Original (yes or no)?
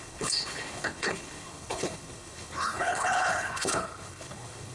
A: no